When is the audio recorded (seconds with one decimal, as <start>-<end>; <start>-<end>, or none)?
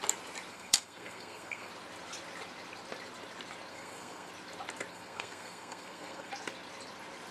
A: 0.0-0.5; 1.7-3.7; 4.3-4.9; 6.3-7.3